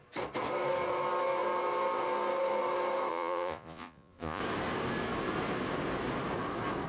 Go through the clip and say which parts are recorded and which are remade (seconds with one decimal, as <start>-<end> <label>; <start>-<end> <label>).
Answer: 0.0-3.1 recorded; 3.1-4.4 remade; 4.4-6.9 recorded